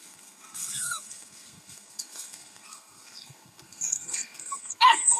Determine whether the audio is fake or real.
fake